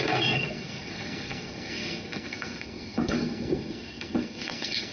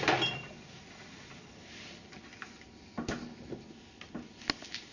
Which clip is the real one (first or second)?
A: second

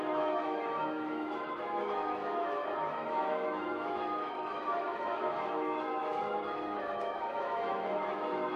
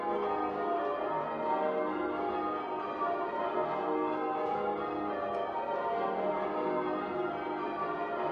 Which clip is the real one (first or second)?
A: second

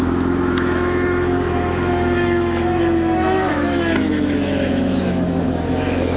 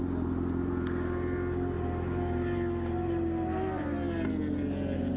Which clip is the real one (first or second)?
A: second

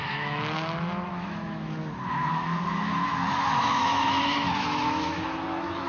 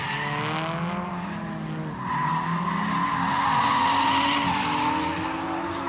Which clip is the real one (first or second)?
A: second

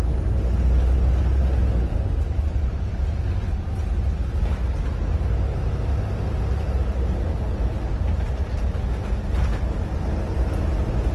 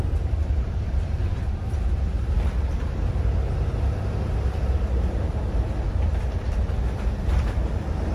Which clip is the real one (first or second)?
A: first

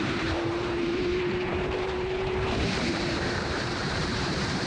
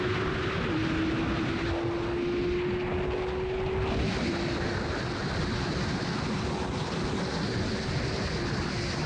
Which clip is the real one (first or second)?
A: second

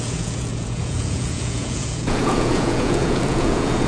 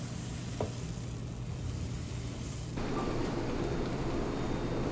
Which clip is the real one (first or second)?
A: second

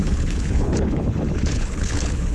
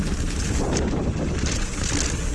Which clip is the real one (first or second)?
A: second